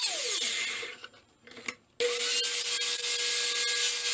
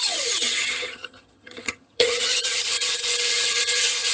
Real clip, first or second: first